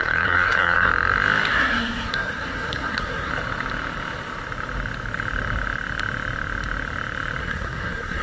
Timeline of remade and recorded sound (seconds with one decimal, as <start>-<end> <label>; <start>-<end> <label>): 0.0-0.9 remade; 0.9-1.5 recorded; 1.5-3.3 remade; 3.3-7.4 recorded; 7.4-8.2 remade